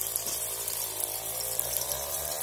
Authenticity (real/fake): fake